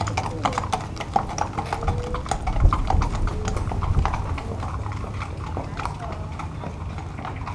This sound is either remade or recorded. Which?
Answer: recorded